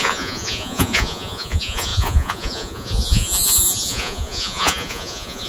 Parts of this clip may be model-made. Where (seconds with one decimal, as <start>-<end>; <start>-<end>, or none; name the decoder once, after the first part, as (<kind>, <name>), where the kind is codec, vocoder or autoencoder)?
0.0-5.5 (vocoder, Vocos)